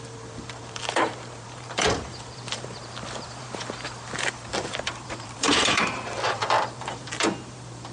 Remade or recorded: remade